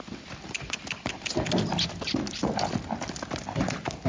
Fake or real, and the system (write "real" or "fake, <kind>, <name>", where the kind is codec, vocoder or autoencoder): real